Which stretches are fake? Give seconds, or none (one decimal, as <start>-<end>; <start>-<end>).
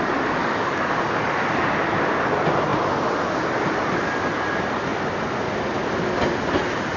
0.4-1.6